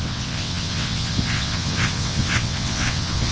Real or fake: fake